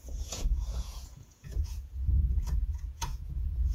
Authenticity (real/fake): fake